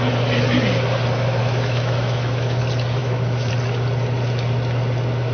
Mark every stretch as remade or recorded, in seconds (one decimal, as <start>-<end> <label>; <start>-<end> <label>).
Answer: 0.0-1.4 recorded; 1.4-2.6 remade; 2.6-3.0 recorded; 3.0-3.5 remade; 3.5-5.3 recorded